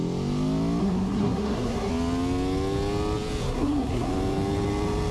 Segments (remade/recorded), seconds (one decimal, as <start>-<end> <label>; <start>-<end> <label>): 0.0-0.8 recorded; 0.8-1.9 remade; 1.9-3.4 recorded; 3.4-4.1 remade; 4.1-5.1 recorded